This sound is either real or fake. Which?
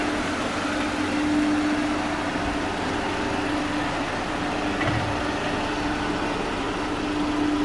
real